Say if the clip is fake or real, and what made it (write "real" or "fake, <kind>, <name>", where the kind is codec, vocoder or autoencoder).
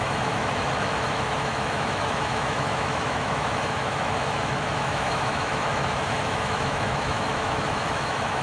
fake, autoencoder, DAC-VAE